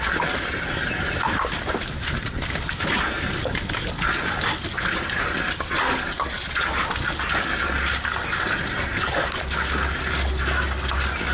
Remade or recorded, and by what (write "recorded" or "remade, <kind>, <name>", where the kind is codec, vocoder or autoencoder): recorded